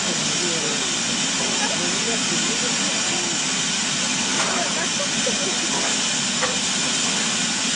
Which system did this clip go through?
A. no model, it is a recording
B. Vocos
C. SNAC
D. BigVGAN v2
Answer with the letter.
A